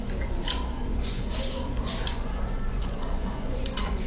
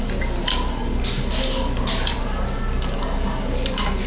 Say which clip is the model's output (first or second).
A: first